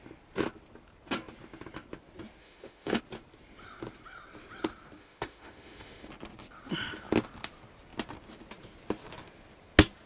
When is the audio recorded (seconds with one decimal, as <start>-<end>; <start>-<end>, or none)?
0.0-2.4; 3.0-5.0; 6.1-10.1